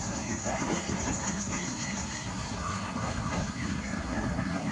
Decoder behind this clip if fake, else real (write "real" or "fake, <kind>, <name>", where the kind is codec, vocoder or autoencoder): fake, codec, SNAC